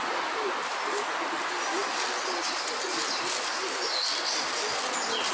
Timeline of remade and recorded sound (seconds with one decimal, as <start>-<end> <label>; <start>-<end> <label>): 0.0-5.3 recorded